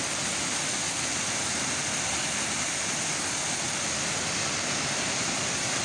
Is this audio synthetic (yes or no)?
no